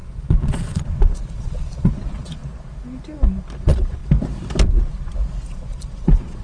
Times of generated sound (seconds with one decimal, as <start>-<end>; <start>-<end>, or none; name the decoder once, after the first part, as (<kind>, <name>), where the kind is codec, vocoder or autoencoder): 0.0-2.4 (vocoder, Vocos); 3.6-4.0; 5.5-6.4